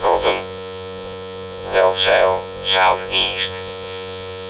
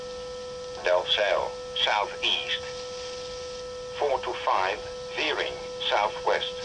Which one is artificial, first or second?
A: first